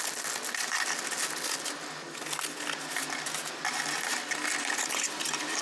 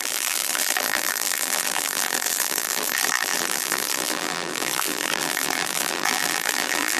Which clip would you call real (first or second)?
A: first